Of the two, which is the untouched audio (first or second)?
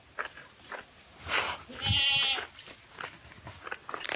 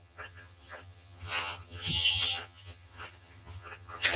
first